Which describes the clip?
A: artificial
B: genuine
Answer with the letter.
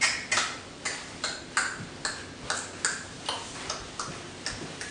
B